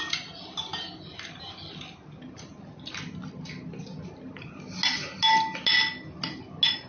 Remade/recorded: recorded